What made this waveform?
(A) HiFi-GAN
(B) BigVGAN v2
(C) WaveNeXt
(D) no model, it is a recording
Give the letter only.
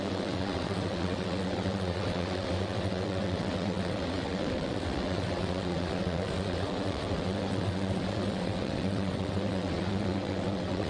C